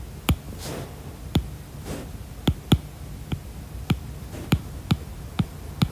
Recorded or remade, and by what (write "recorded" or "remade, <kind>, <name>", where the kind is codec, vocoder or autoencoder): recorded